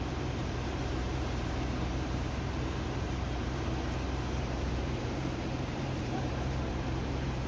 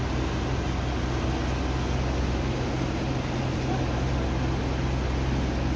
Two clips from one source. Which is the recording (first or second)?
second